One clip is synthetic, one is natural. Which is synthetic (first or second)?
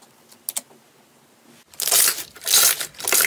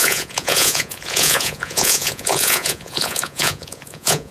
second